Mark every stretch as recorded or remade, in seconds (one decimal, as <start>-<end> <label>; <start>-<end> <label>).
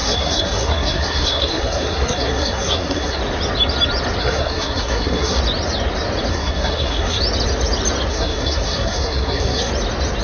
0.0-3.2 remade; 3.2-4.2 recorded; 4.2-5.4 remade; 5.4-6.3 recorded; 6.3-7.2 remade; 7.2-8.1 recorded; 8.1-9.7 remade; 9.7-10.2 recorded